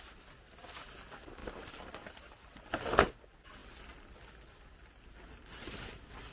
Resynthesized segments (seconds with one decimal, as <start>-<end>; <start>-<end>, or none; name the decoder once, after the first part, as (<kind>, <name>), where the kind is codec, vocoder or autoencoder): 1.4-3.1 (vocoder, BigVGAN v2)